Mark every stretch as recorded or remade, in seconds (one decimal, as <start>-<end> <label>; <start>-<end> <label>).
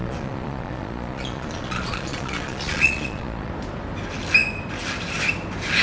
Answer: 0.0-3.5 remade; 3.5-5.8 recorded